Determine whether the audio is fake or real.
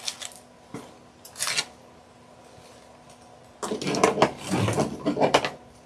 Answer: real